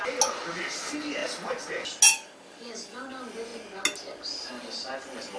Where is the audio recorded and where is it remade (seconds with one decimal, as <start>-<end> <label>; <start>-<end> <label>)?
0.0-2.1 recorded; 2.1-3.1 remade; 3.1-5.4 recorded

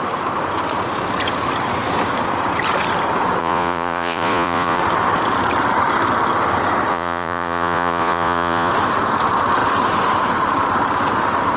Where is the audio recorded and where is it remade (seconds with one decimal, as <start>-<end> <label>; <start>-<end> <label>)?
0.0-3.4 recorded; 3.4-4.8 remade; 4.8-6.9 recorded; 6.9-8.7 remade; 8.7-11.6 recorded